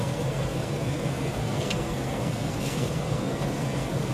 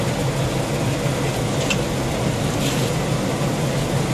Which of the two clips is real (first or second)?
second